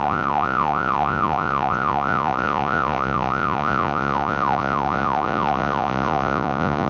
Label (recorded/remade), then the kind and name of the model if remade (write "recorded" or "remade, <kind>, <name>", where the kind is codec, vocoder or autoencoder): remade, vocoder, Vocos